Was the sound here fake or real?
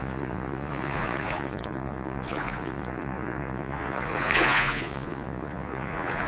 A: fake